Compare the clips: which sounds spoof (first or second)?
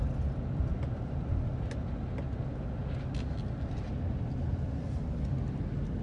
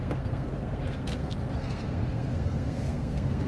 second